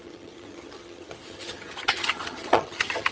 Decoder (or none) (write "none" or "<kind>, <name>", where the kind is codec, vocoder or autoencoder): vocoder, HiFi-GAN